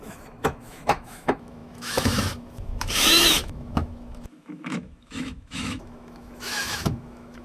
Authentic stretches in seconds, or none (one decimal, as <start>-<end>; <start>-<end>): none